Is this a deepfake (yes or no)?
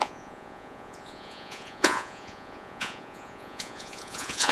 yes